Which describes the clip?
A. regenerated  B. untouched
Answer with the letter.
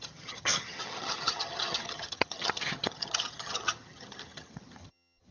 A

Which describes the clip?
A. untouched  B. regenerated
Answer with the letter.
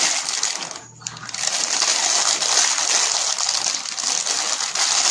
A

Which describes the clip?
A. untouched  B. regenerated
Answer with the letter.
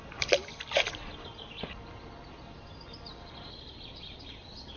B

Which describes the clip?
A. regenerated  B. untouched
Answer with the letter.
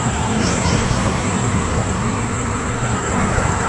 A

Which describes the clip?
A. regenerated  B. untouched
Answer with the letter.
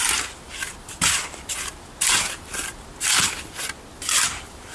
B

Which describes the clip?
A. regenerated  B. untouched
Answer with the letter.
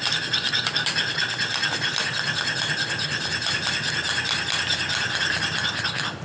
B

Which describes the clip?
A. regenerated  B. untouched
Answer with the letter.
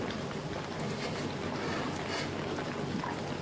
B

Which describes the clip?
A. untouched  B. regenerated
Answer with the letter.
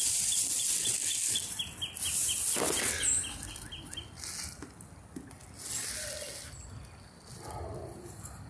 A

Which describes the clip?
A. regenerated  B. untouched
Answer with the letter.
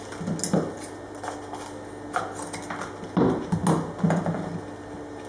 B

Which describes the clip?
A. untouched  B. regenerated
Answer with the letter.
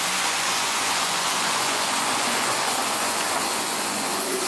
B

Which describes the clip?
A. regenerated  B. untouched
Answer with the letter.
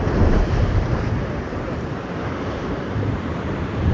A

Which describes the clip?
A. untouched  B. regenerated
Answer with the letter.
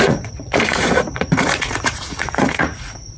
B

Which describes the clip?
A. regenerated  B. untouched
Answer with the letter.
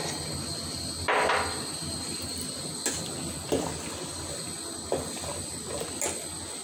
B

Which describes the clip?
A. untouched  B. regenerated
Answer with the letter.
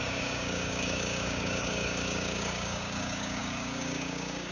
B